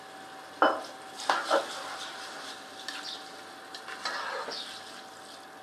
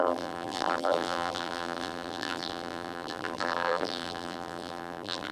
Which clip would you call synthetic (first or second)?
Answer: second